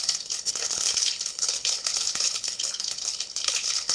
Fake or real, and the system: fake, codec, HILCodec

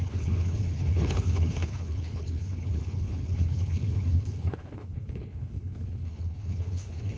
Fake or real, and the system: fake, codec, HILCodec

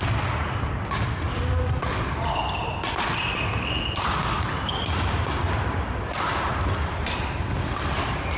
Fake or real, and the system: real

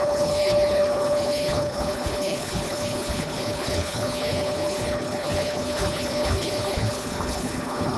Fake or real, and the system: fake, codec, HILCodec